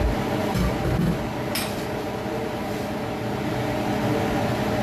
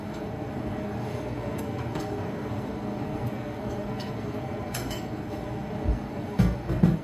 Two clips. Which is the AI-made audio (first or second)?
second